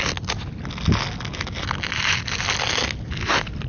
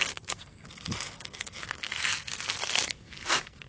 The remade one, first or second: second